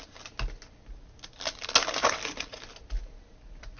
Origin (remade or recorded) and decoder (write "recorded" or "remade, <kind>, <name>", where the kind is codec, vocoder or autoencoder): recorded